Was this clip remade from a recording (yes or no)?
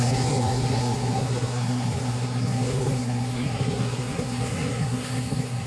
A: yes